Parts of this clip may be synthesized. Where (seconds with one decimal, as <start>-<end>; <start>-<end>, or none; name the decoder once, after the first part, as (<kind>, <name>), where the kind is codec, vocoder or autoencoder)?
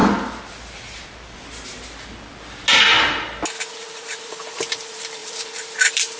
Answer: 3.7-6.2 (vocoder, BigVGAN v2)